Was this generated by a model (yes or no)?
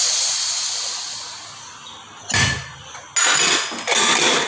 no